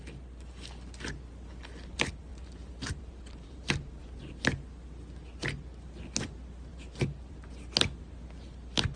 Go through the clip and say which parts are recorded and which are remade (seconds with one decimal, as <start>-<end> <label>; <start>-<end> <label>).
0.0-2.3 recorded; 2.3-4.0 remade; 4.0-6.7 recorded; 6.7-7.3 remade; 7.3-9.0 recorded